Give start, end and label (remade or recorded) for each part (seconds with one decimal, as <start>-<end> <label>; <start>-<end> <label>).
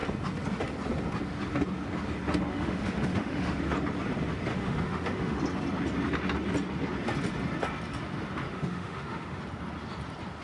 0.0-2.5 recorded; 2.5-3.6 remade; 3.6-4.5 recorded; 4.5-5.4 remade; 5.4-8.5 recorded; 8.5-9.4 remade; 9.4-10.4 recorded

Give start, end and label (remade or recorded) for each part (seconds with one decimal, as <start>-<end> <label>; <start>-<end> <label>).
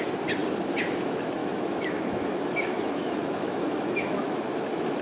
0.0-1.4 recorded; 1.4-4.4 remade; 4.4-5.0 recorded